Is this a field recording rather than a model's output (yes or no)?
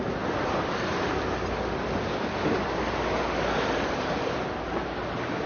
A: yes